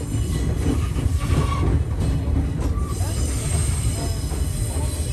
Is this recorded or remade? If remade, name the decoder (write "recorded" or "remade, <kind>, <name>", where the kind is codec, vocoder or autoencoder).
recorded